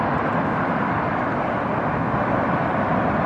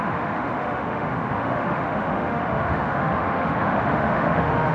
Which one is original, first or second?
first